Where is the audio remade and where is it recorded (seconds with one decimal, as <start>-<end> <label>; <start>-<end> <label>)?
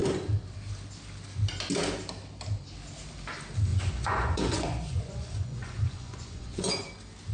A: 0.0-3.7 recorded; 3.7-6.7 remade; 6.7-7.3 recorded